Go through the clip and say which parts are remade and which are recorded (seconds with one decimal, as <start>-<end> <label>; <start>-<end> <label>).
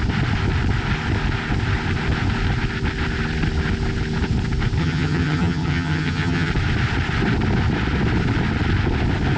0.0-4.8 recorded; 4.8-6.5 remade; 6.5-9.4 recorded